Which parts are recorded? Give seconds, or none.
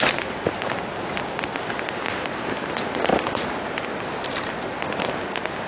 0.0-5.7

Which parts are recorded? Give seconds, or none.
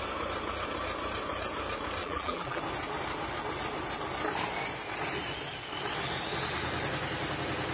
0.0-2.0; 2.6-7.7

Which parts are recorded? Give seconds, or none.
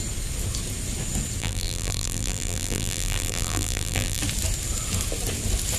0.0-1.4; 4.2-5.8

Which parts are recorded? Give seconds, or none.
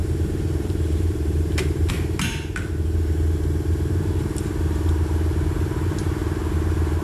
1.9-7.0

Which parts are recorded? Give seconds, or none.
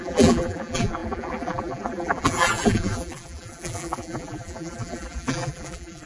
none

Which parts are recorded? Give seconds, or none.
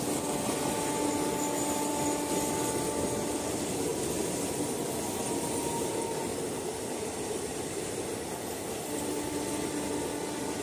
0.0-6.3; 7.9-10.6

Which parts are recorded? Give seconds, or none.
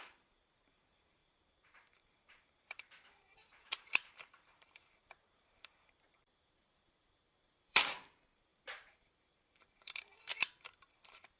10.3-10.9